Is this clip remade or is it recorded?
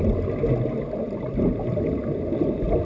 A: recorded